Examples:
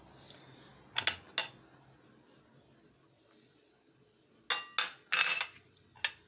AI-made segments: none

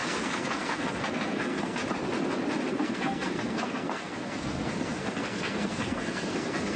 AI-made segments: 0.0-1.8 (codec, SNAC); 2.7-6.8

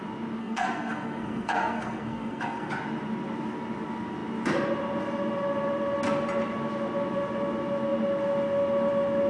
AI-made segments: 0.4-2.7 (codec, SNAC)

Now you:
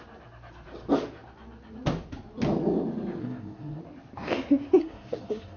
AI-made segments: 3.2-3.8 (codec, SNAC); 4.8-5.6

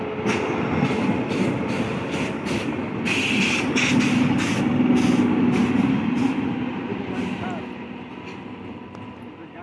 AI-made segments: none

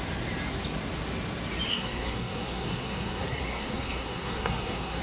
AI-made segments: 1.7-5.0 (codec, SNAC)

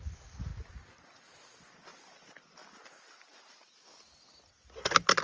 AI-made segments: none